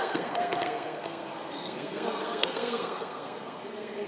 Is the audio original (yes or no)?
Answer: no